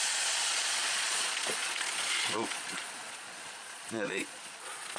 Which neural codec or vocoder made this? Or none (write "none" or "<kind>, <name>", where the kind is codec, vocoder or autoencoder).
vocoder, Vocos